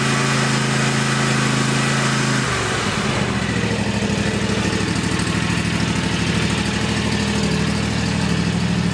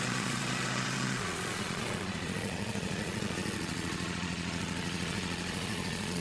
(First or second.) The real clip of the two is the first